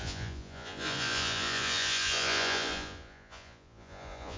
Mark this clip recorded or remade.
remade